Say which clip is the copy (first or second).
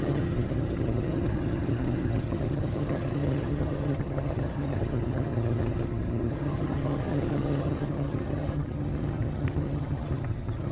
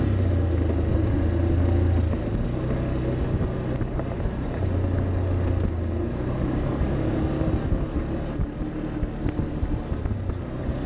first